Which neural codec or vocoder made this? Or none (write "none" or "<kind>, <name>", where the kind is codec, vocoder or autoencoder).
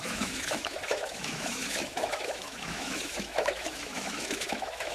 autoencoder, DAC-VAE